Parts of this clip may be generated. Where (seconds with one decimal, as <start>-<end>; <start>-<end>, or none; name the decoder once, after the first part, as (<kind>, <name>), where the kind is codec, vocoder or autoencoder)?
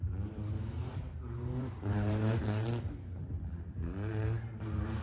0.0-3.2 (vocoder, BigVGAN v2); 4.1-5.0